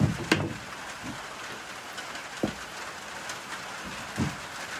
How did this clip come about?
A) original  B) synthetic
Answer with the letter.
A